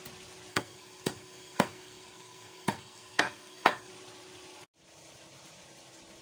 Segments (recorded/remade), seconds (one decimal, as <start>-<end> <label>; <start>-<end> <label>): 0.0-0.5 recorded; 0.5-3.9 remade; 3.9-6.2 recorded